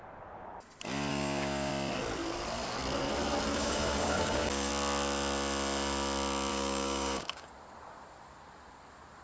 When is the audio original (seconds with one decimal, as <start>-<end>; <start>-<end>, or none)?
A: 0.0-1.1; 1.7-3.5; 4.7-6.5; 7.5-9.2